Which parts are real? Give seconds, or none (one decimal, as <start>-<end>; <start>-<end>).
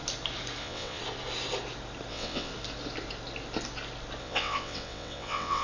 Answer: 0.0-0.6; 1.0-2.1; 2.5-4.2